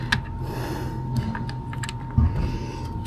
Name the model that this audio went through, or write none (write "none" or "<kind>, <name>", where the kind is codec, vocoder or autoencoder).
none